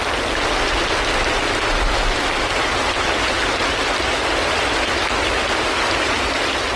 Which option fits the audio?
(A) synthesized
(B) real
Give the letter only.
B